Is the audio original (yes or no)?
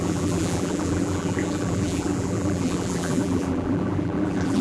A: no